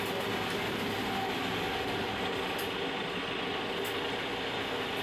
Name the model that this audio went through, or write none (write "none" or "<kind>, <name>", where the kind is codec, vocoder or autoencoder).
none